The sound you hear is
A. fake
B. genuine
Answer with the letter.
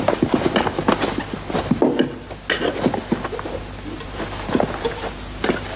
B